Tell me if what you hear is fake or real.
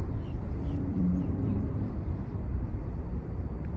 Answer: fake